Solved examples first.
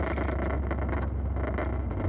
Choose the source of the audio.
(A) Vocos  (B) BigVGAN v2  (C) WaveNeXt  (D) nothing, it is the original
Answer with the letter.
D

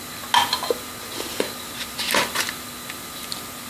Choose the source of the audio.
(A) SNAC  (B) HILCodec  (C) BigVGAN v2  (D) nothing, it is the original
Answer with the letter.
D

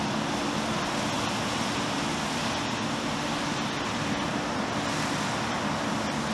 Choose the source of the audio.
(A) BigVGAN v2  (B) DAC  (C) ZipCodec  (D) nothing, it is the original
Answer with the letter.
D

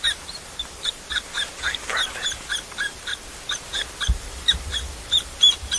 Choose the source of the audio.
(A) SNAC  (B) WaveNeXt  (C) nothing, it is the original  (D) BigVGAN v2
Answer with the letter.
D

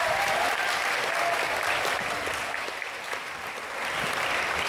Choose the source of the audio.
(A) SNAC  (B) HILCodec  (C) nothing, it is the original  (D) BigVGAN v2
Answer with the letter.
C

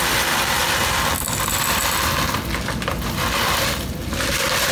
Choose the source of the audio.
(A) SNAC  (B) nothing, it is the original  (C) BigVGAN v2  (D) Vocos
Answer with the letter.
B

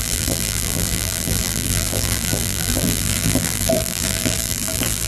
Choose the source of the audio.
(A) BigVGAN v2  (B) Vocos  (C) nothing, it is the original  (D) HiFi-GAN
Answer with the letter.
A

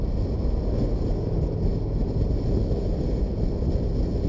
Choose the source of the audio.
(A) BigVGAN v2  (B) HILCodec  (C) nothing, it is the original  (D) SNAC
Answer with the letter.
C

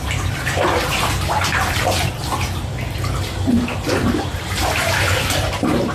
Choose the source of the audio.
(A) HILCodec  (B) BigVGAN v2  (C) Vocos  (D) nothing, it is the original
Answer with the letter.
B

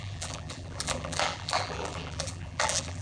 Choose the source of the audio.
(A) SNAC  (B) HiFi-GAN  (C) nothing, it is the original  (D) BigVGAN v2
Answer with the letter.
D